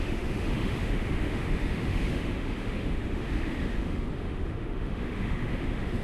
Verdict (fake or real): fake